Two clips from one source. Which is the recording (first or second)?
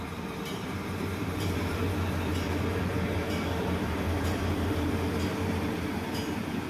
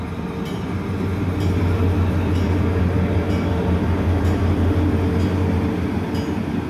second